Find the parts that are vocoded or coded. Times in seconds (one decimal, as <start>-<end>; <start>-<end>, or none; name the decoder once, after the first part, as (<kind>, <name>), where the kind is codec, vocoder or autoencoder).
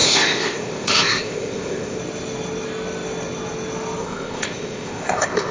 0.0-2.0 (codec, ZipCodec); 4.0-5.5